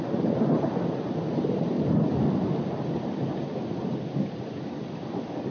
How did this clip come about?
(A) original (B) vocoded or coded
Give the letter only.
B